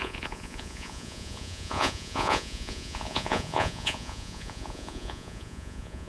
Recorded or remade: remade